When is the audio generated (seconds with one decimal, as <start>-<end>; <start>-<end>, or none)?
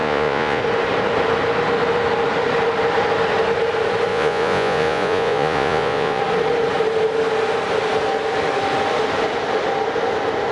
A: 0.0-0.6; 4.1-6.2